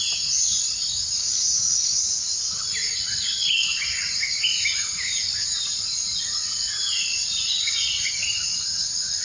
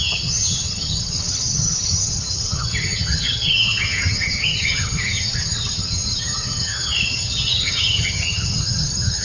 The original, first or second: first